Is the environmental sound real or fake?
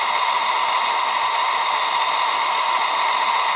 real